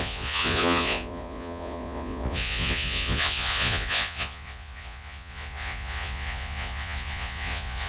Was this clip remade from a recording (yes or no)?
yes